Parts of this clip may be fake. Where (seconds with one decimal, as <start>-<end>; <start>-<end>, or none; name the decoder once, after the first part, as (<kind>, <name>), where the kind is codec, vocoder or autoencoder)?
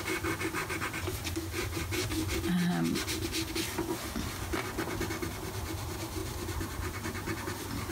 0.6-1.4 (vocoder, BigVGAN v2)